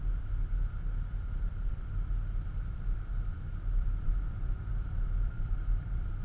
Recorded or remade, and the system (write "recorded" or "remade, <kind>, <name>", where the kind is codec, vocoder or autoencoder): remade, vocoder, BigVGAN v2